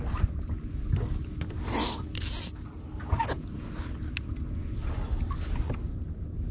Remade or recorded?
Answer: recorded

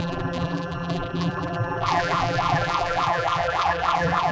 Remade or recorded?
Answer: remade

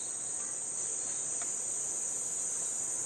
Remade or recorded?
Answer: recorded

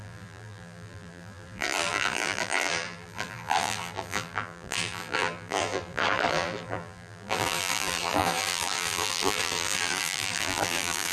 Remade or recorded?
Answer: remade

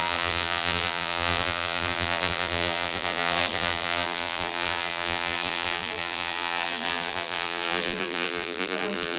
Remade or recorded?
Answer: remade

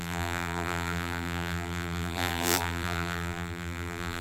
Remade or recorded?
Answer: remade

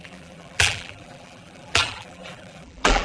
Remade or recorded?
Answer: remade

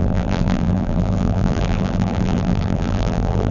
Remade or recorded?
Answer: remade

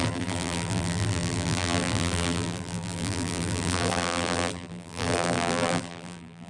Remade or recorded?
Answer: remade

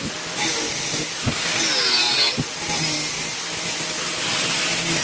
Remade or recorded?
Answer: recorded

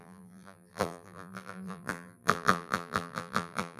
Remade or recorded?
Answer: remade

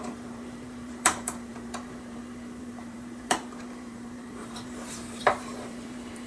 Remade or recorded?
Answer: remade